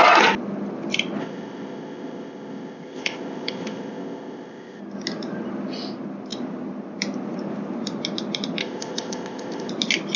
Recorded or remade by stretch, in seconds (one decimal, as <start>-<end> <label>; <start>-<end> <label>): 0.0-1.2 recorded; 1.2-4.8 remade; 4.8-8.6 recorded; 8.6-9.7 remade; 9.7-10.2 recorded